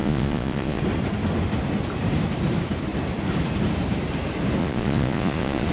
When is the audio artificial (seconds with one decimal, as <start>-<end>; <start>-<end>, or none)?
0.0-0.8; 4.6-5.7